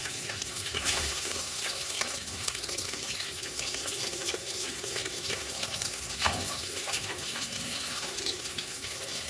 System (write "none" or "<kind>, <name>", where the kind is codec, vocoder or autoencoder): codec, SNAC